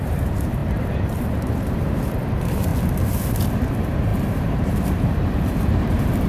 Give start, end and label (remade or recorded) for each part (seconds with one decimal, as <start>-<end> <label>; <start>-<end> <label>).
0.0-2.7 remade; 2.7-3.4 recorded; 3.4-6.3 remade